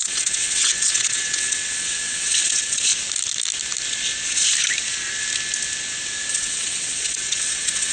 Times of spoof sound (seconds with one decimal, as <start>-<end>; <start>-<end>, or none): 0.0-2.9; 6.3-7.9